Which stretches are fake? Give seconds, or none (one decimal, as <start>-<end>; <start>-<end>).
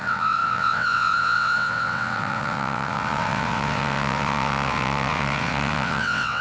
0.0-6.4